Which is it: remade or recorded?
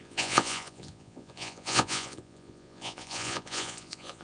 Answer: remade